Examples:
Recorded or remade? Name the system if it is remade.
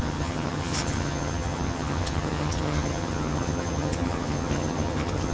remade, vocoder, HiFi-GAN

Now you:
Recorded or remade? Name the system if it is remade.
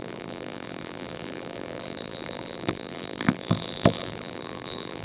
remade, vocoder, BigVGAN v2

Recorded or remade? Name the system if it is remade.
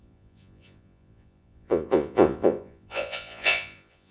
remade, vocoder, Vocos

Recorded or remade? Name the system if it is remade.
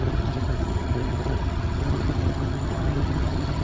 remade, vocoder, HiFi-GAN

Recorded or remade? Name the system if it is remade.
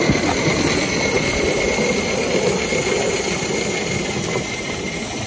recorded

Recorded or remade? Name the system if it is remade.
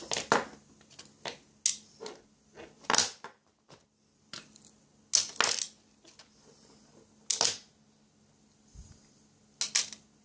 recorded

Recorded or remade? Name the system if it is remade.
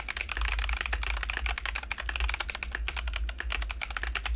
recorded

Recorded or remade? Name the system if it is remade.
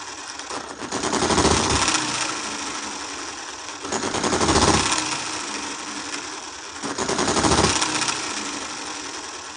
recorded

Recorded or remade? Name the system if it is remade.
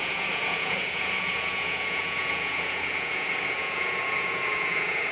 remade, vocoder, Vocos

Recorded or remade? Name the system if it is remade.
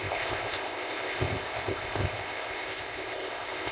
remade, codec, ZipCodec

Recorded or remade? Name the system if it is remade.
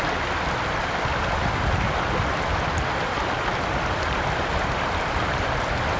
recorded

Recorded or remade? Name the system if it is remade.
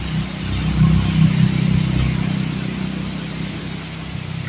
recorded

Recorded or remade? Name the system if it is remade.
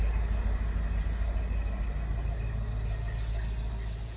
recorded